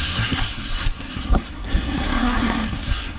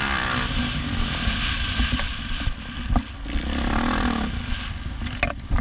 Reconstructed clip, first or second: first